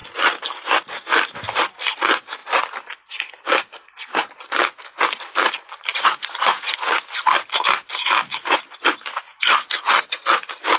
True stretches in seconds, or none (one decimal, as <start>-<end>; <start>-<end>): 0.0-5.9; 7.0-10.8